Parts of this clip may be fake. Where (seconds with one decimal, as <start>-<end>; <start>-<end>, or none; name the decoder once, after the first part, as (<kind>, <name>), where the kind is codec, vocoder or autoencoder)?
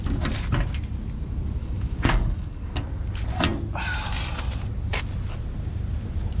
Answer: 1.6-2.7 (codec, DAC)